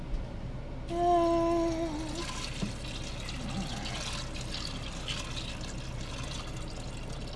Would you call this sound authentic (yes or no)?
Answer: yes